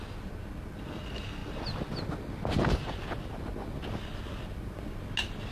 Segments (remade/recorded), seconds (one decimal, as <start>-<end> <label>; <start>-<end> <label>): 0.0-5.5 recorded

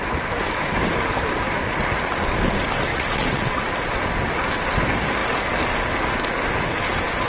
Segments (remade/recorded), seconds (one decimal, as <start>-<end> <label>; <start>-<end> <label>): 0.0-2.9 recorded; 2.9-3.6 remade; 3.6-7.3 recorded

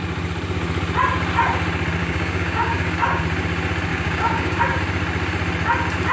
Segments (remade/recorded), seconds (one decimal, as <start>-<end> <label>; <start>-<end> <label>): 0.0-2.0 recorded; 2.0-3.2 remade; 3.2-3.9 recorded; 3.9-4.6 remade; 4.6-6.1 recorded

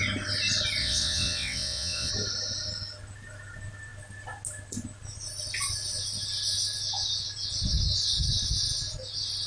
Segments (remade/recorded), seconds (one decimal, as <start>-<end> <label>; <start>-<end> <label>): 0.0-0.8 recorded; 0.8-2.1 remade; 2.1-9.5 recorded

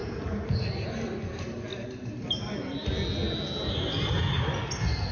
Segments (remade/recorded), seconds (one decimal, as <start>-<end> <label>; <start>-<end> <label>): 0.0-5.1 recorded

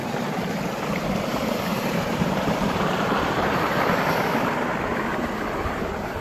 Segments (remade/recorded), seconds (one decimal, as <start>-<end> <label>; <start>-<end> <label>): 0.0-1.3 recorded; 1.3-3.6 remade; 3.6-6.2 recorded